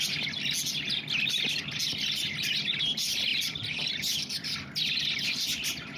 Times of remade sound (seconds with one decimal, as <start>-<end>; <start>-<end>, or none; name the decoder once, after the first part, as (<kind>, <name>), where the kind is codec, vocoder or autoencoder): none